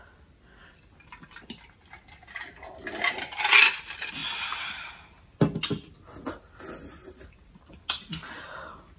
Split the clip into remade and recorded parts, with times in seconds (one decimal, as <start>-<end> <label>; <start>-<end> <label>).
0.0-9.0 recorded